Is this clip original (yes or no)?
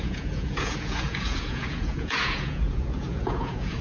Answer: no